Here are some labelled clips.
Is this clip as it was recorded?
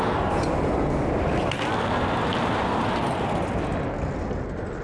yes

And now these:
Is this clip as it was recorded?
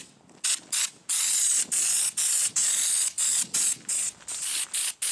yes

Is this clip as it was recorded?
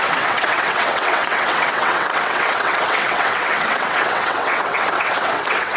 no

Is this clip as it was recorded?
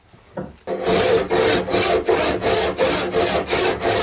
yes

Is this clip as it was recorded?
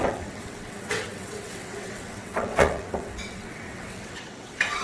no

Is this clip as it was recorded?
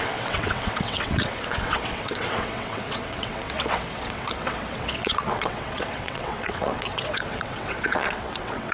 no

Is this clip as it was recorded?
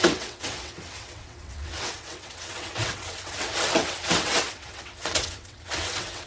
no